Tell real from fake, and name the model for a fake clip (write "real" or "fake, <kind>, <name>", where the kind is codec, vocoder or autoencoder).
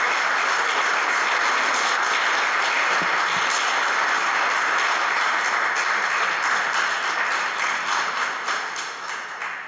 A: real